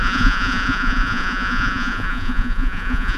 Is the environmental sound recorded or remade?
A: remade